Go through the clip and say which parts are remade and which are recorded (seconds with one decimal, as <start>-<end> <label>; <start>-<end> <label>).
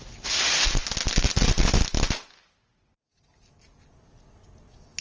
0.0-5.0 recorded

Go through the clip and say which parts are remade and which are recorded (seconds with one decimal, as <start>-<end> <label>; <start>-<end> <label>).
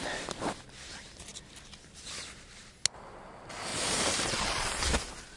0.0-3.7 recorded; 3.7-4.3 remade; 4.3-5.4 recorded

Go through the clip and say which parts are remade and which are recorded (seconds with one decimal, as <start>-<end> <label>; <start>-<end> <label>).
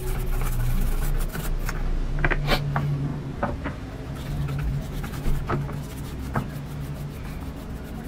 0.0-3.1 recorded; 3.1-5.5 remade; 5.5-8.1 recorded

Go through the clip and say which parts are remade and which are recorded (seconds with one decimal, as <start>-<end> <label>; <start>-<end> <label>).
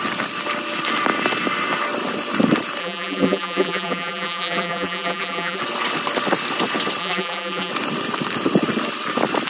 0.0-2.8 recorded; 2.8-5.6 remade; 5.6-7.0 recorded; 7.0-7.7 remade; 7.7-9.5 recorded